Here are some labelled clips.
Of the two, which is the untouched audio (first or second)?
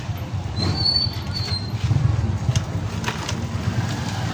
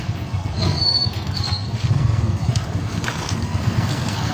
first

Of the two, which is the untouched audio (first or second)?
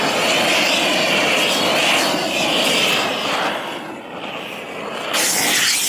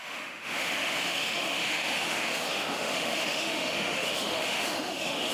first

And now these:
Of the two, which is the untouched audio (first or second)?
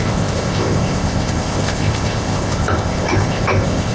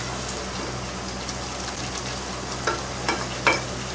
second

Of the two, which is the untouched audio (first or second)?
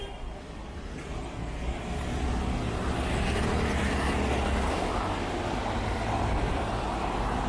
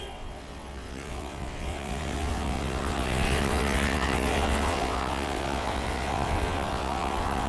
first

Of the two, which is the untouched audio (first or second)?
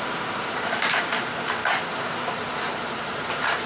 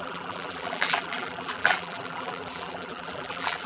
first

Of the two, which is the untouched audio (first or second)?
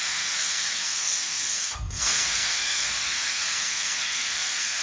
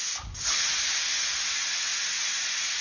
second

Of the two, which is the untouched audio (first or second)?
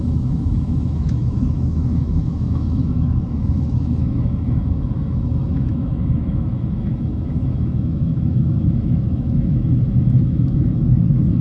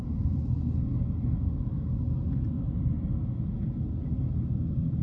second